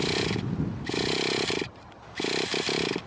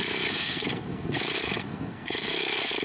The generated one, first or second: second